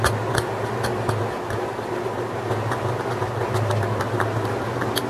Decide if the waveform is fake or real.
real